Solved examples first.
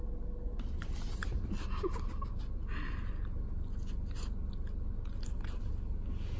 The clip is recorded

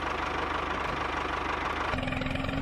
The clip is recorded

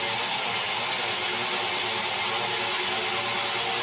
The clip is recorded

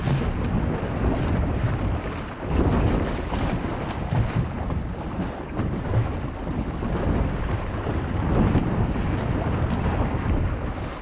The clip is recorded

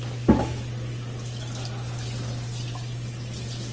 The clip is recorded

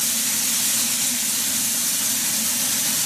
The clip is recorded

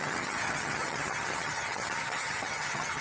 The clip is remade